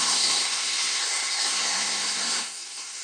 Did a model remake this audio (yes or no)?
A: yes